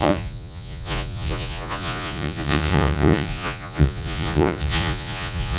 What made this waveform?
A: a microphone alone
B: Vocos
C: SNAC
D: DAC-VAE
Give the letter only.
B